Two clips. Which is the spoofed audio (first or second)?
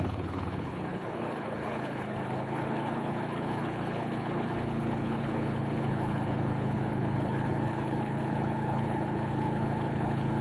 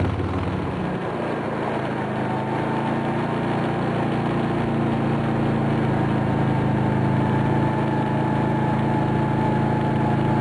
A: first